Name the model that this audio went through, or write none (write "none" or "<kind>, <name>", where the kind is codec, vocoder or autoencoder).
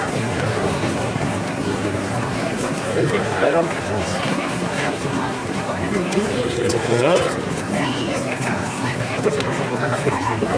codec, SNAC